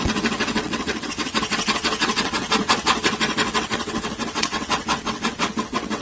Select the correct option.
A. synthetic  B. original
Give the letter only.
A